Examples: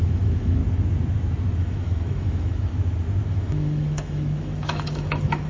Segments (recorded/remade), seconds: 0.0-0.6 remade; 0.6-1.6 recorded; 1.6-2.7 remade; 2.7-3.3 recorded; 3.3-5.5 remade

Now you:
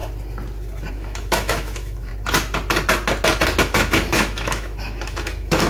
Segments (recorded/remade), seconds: 0.0-0.9 recorded; 0.9-2.1 remade; 2.1-3.6 recorded; 3.6-5.7 remade

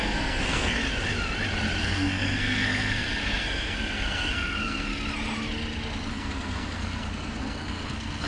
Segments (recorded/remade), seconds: 0.0-0.8 remade; 0.8-1.8 recorded; 1.8-4.9 remade; 4.9-6.1 recorded; 6.1-8.3 remade

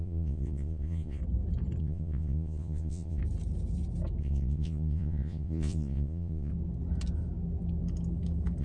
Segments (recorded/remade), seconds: 0.0-1.2 remade; 1.2-1.8 recorded; 1.8-3.2 remade; 3.2-4.2 recorded; 4.2-6.5 remade; 6.5-8.6 recorded

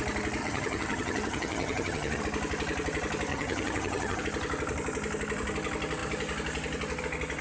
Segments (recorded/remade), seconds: 0.0-0.4 recorded; 0.4-2.2 remade; 2.2-3.3 recorded; 3.3-4.2 remade; 4.2-7.4 recorded

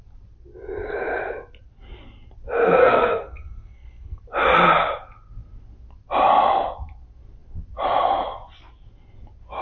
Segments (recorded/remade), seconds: 0.0-2.8 recorded; 2.8-4.2 remade; 4.2-9.6 recorded

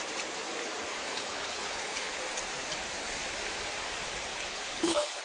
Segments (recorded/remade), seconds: 0.0-0.9 recorded; 0.9-2.2 remade; 2.2-4.3 recorded; 4.3-5.2 remade